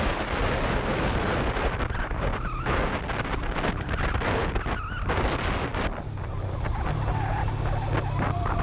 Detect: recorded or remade recorded